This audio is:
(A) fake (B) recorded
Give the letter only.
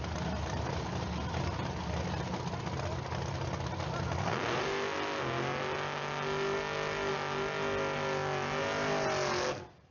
B